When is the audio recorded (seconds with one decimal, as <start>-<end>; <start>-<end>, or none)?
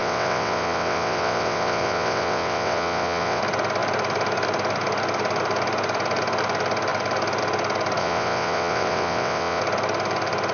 3.4-8.0; 9.6-10.5